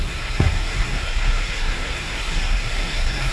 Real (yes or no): no